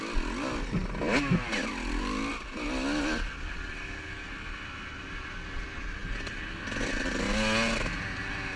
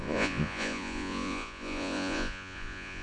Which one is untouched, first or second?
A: first